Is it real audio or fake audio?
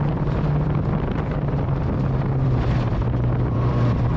fake